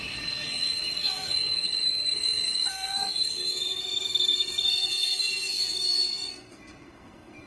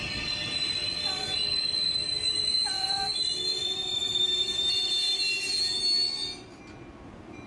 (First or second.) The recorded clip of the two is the second